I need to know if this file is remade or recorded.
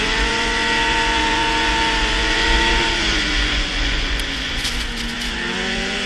remade